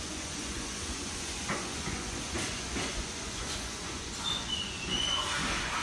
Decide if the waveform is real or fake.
fake